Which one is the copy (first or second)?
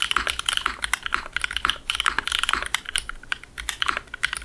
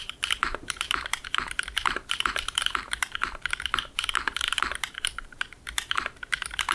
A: second